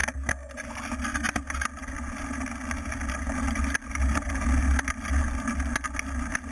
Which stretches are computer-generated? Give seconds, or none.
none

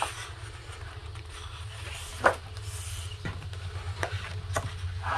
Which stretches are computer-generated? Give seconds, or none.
none

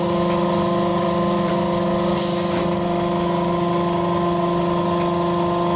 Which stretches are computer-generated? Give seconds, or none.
0.9-1.5 (vocoder, BigVGAN v2)

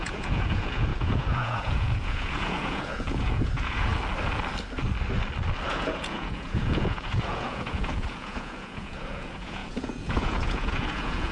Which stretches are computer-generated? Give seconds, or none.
0.0-3.9 (vocoder, Vocos); 5.7-11.3